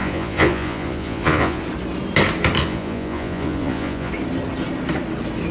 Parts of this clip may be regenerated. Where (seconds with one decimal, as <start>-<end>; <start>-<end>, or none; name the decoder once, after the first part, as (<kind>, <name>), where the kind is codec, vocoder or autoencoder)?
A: 0.0-1.6 (vocoder, Vocos); 2.6-4.1